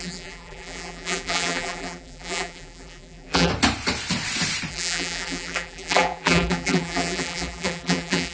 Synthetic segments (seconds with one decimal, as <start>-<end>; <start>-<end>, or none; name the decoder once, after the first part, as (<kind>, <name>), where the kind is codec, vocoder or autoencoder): 0.0-3.5 (vocoder, BigVGAN v2); 4.7-8.3